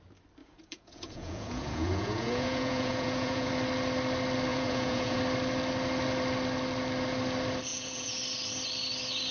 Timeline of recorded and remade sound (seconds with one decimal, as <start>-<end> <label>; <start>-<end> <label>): 0.0-0.4 recorded; 0.4-3.5 remade; 3.5-4.5 recorded; 4.5-5.2 remade; 5.2-7.7 recorded; 7.7-8.2 remade; 8.2-9.3 recorded